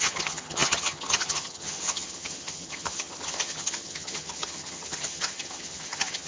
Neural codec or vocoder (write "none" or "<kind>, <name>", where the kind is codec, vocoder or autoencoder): vocoder, HiFi-GAN